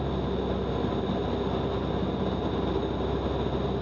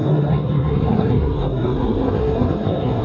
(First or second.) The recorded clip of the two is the first